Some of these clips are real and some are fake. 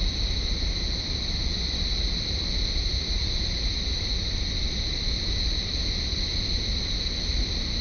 real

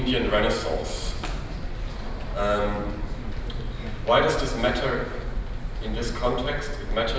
real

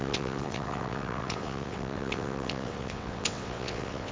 fake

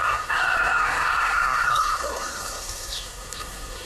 fake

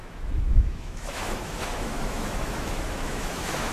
fake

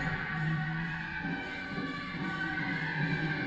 fake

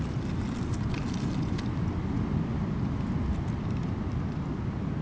real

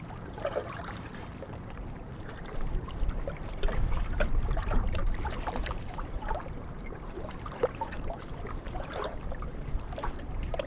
fake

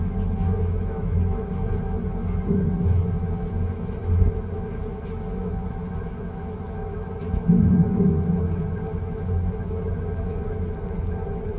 fake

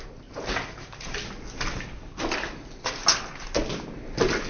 real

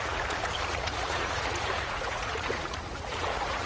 fake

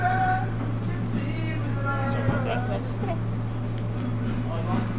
real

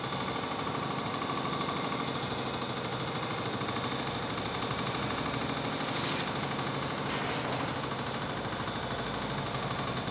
real